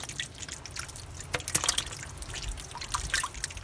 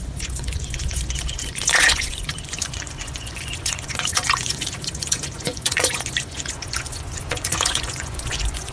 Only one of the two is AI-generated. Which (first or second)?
second